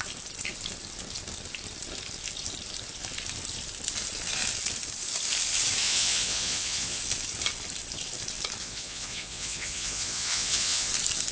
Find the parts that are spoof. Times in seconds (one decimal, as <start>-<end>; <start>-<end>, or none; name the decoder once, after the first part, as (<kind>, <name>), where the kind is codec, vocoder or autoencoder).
5.8-7.0 (vocoder, Vocos); 8.6-10.9